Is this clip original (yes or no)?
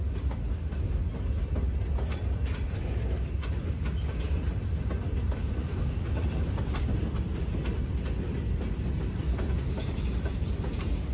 yes